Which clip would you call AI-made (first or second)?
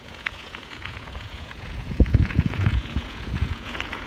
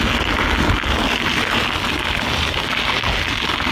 first